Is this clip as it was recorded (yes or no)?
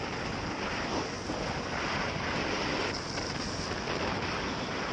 yes